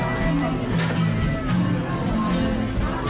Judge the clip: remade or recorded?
recorded